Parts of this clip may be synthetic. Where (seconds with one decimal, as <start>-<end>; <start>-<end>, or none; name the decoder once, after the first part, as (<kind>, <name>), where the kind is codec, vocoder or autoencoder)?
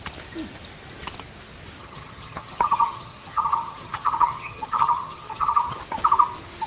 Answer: 1.8-5.8 (vocoder, HiFi-GAN)